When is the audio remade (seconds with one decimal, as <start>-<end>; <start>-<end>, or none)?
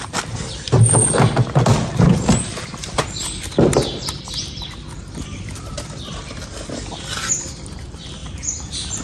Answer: 1.7-5.7